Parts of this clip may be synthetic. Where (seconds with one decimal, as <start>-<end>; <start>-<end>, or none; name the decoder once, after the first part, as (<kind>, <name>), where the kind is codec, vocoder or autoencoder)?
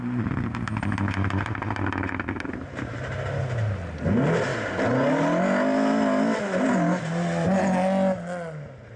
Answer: none